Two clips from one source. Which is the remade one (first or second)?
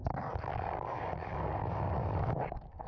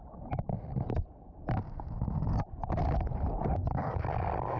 first